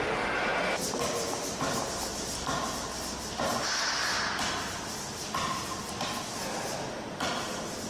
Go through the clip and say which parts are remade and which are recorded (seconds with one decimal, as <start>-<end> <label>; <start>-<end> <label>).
0.0-7.9 recorded